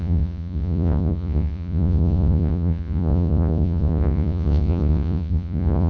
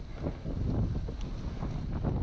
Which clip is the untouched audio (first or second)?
second